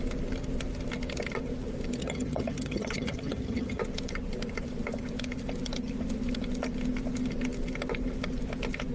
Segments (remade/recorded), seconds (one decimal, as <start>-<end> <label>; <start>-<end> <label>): 0.0-2.0 recorded; 2.0-3.8 remade; 3.8-8.9 recorded